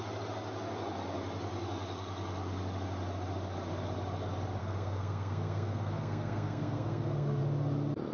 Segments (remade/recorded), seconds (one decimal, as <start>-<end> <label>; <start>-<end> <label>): 0.0-4.6 recorded; 4.6-7.4 remade; 7.4-8.1 recorded

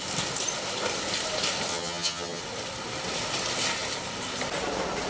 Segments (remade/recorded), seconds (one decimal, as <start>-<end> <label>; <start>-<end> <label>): 0.0-1.7 recorded; 1.7-2.4 remade; 2.4-5.1 recorded

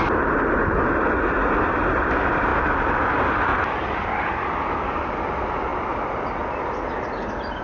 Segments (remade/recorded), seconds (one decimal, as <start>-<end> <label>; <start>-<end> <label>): 0.0-7.6 recorded